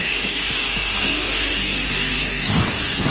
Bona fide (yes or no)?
no